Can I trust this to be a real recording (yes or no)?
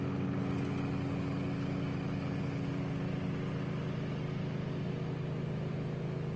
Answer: yes